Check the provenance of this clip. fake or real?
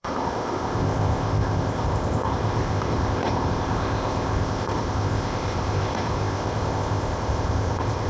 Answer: fake